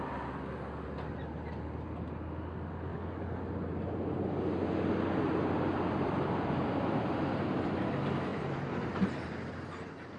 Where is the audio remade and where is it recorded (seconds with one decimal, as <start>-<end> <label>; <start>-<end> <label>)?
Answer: 0.0-2.9 recorded; 2.9-3.5 remade; 3.5-10.2 recorded